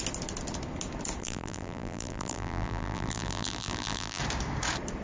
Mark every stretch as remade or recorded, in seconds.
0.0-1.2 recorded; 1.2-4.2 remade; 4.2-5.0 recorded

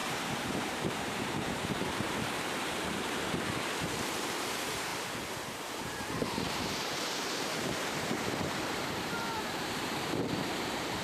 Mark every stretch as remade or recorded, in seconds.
0.0-4.9 remade; 4.9-5.8 recorded; 5.8-11.0 remade